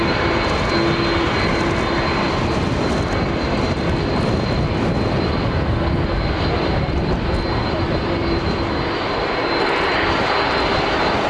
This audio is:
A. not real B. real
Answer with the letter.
B